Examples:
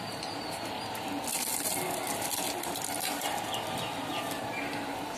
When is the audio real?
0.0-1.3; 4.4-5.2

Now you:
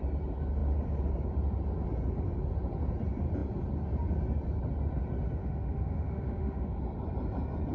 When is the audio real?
0.0-5.4; 6.8-7.7

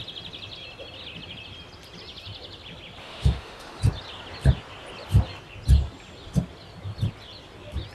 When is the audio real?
0.0-3.0; 3.8-7.9